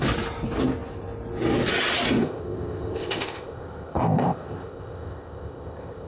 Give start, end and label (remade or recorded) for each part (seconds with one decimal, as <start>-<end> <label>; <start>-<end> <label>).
0.0-2.2 recorded; 2.2-6.1 remade